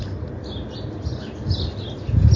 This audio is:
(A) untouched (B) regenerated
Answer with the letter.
A